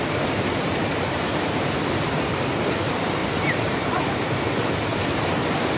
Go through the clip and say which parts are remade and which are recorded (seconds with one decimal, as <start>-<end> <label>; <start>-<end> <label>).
0.0-0.8 recorded; 0.8-2.3 remade; 2.3-3.2 recorded; 3.2-4.3 remade; 4.3-5.8 recorded